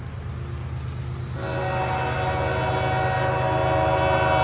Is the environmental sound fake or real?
real